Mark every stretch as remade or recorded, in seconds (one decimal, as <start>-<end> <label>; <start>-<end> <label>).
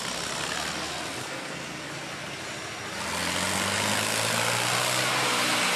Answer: 0.0-1.2 recorded; 1.2-1.9 remade; 1.9-5.8 recorded